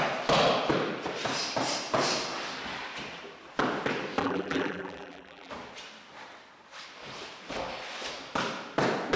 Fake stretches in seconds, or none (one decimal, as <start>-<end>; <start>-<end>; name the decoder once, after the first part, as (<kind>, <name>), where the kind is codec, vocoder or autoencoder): 4.2-5.5 (vocoder, BigVGAN v2)